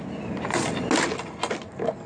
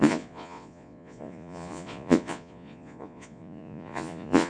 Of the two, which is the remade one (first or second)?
second